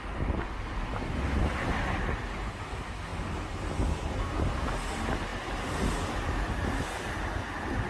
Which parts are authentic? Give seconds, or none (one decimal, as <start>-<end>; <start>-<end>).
0.0-7.9